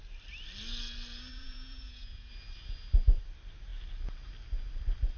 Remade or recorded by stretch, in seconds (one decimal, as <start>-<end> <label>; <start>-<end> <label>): 0.0-1.3 recorded; 1.3-2.3 remade; 2.3-5.2 recorded